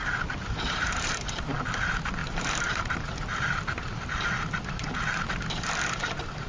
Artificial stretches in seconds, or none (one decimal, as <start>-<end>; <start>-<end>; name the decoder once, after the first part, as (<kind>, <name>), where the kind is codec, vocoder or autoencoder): 0.0-1.4 (vocoder, BigVGAN v2); 2.2-3.1